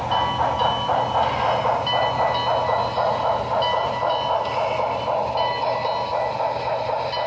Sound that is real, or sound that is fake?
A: real